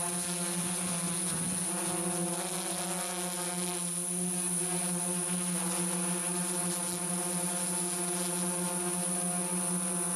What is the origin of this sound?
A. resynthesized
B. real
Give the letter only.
B